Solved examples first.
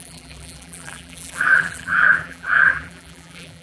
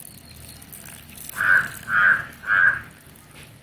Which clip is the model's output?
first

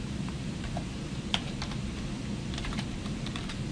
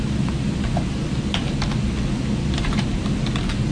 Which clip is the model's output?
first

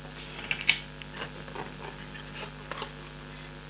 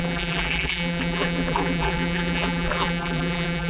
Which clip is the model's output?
second